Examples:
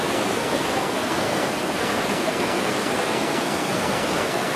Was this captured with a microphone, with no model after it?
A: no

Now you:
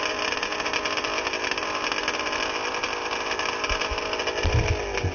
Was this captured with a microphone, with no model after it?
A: yes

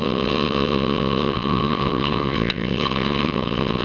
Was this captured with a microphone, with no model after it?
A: no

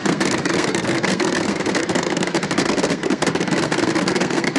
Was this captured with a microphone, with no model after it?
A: no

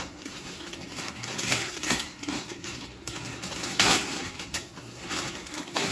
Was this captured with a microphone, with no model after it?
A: no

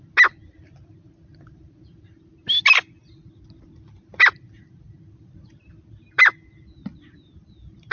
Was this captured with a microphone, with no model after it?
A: yes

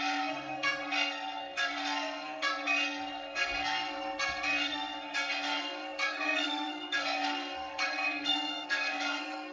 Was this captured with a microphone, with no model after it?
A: no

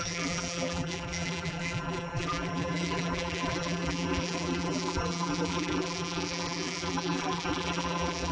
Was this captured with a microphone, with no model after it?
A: no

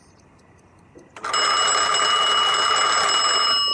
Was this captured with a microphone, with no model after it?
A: yes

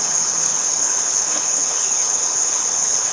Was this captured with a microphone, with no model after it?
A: no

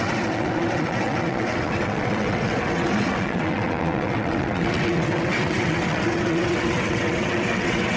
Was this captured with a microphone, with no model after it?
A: no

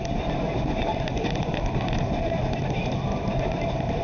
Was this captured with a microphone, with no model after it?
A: yes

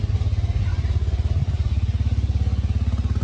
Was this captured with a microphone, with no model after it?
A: yes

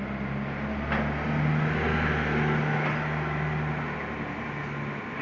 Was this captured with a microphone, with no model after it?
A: yes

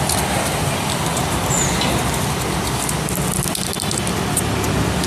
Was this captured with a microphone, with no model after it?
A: yes